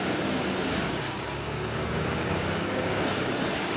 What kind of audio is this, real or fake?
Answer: fake